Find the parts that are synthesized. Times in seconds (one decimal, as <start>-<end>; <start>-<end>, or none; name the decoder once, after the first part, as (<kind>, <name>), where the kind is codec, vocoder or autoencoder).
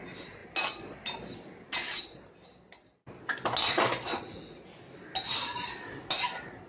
4.1-4.7 (vocoder, Vocos)